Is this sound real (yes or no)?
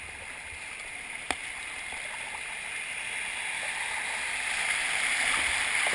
yes